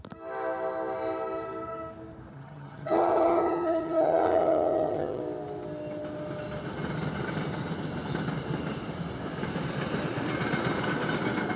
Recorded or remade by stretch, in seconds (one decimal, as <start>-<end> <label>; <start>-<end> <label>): 0.0-2.3 recorded; 2.3-5.2 remade; 5.2-11.6 recorded